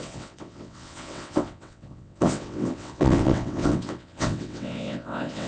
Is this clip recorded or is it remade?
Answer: remade